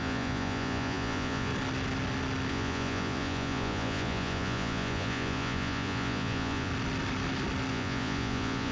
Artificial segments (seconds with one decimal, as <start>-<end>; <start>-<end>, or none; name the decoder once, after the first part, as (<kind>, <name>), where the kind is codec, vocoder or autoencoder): 0.0-1.5 (vocoder, Vocos); 2.5-6.7; 7.7-8.7